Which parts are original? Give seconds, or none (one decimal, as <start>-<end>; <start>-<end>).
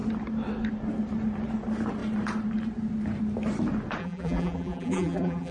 0.0-4.0